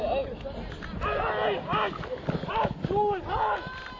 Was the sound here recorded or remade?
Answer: recorded